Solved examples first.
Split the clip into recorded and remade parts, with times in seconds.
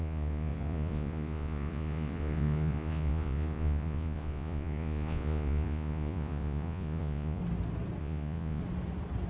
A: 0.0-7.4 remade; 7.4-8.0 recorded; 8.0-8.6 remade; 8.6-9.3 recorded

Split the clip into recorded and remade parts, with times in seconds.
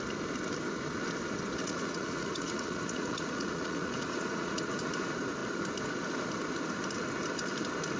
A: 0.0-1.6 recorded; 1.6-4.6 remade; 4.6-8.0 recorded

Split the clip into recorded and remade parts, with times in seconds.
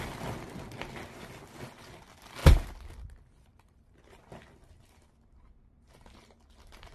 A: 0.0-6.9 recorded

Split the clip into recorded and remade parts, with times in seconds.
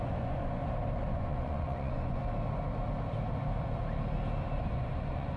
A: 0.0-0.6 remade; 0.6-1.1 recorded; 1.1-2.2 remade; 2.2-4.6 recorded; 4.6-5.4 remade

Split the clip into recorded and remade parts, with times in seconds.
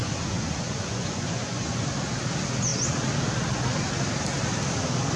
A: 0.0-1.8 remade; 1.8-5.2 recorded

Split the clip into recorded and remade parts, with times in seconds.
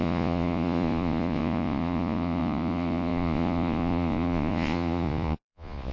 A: 0.0-5.9 remade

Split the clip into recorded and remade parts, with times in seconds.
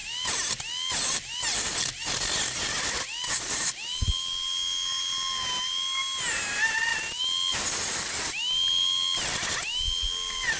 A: 0.0-10.6 recorded